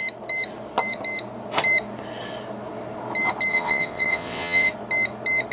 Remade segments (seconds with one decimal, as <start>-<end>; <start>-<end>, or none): 3.5-4.7